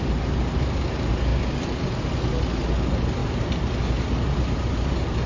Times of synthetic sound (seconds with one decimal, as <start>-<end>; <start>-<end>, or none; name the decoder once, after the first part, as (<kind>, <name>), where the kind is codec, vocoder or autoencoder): 0.0-1.3 (vocoder, BigVGAN v2); 2.4-5.3